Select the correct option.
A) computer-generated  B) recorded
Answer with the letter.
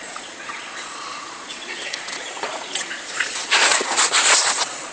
A